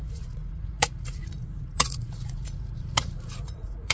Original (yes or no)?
no